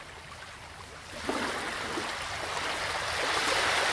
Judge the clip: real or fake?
real